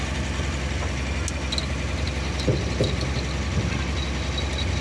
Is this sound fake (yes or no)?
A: no